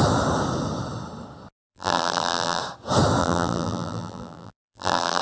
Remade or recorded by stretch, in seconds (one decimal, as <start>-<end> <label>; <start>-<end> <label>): 0.0-1.7 recorded; 1.7-2.6 remade; 2.6-3.2 recorded; 3.2-5.2 remade

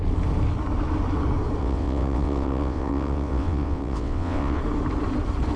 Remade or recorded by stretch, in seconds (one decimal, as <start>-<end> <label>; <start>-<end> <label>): 0.0-1.6 recorded; 1.6-4.6 remade; 4.6-5.6 recorded

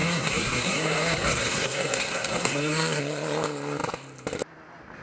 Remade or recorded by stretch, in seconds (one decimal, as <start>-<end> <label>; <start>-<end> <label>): 0.0-3.0 remade; 3.0-5.0 recorded

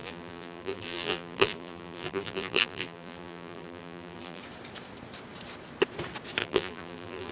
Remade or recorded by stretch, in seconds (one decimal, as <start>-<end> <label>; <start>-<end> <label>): 0.0-4.4 remade; 4.4-6.4 recorded; 6.4-7.3 remade